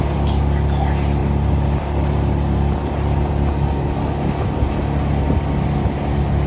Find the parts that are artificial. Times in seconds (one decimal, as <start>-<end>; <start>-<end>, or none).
none